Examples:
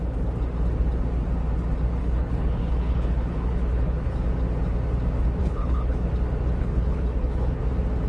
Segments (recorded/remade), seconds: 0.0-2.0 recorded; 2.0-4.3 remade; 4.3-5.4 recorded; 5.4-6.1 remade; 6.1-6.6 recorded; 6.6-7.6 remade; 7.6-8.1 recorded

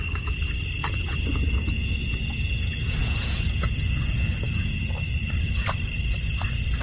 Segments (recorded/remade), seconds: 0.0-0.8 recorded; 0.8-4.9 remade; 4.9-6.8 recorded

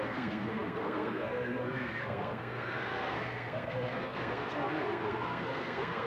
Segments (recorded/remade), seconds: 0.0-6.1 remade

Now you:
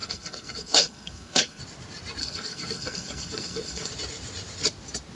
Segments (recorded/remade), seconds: 0.0-1.6 remade; 1.6-2.2 recorded; 2.2-3.9 remade; 3.9-5.1 recorded

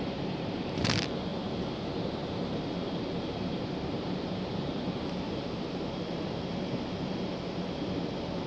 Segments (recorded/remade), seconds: 0.0-8.5 remade